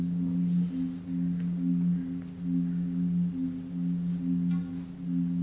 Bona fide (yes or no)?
yes